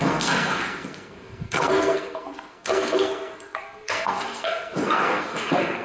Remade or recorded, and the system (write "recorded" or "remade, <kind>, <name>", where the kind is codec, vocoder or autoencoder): remade, codec, SNAC